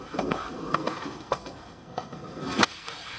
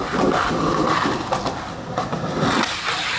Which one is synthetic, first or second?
first